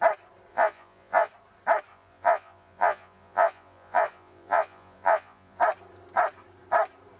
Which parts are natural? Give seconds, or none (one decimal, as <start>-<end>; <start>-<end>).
0.0-0.5; 1.3-1.9; 5.6-7.2

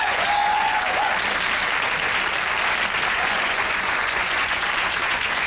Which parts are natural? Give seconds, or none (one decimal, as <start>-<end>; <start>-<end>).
1.1-3.1

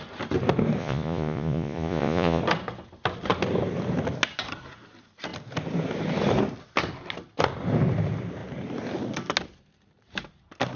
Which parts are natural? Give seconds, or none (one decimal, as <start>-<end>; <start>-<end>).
0.0-0.8; 2.4-10.8

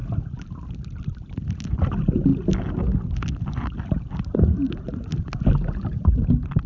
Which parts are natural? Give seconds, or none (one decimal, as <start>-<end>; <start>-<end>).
0.0-6.7

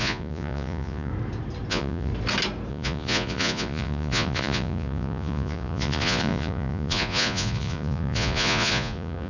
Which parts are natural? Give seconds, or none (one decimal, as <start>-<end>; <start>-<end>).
1.1-1.7; 2.1-2.7